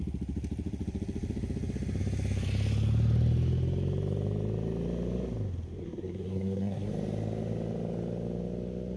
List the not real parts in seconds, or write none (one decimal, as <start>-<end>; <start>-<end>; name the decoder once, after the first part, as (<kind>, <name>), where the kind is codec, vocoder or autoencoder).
5.8-6.9 (codec, SNAC)